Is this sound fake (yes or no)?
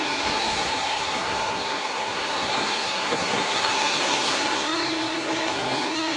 yes